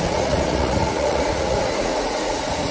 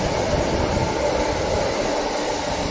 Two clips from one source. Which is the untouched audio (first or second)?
second